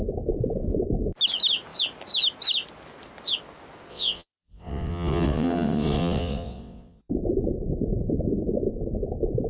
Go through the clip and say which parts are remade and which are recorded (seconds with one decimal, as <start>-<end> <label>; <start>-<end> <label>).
0.0-3.9 recorded; 3.9-7.0 remade; 7.0-9.5 recorded